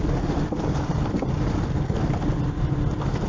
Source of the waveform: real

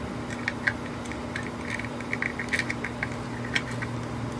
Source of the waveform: real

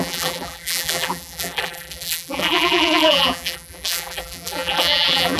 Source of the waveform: fake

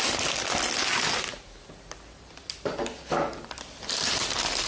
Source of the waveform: real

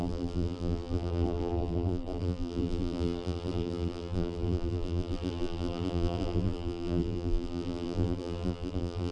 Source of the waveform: fake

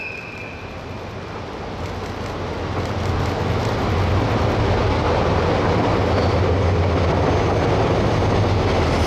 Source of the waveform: real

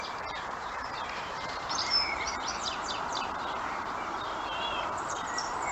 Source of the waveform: fake